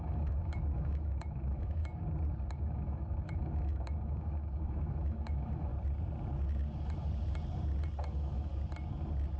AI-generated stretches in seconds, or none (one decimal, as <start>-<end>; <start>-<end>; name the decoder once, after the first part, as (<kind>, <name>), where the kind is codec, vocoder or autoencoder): 0.0-1.9 (autoencoder, DAC-VAE); 2.5-5.7; 8.0-8.5